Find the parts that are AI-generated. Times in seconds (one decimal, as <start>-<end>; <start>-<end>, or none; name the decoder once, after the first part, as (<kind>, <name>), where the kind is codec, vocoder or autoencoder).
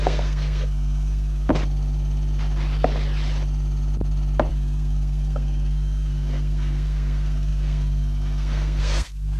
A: 0.0-1.5 (codec, SNAC); 4.5-9.4